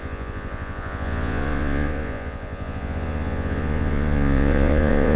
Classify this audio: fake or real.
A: fake